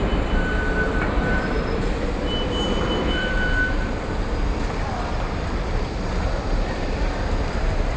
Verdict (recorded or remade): remade